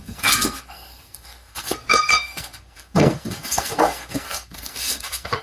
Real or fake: fake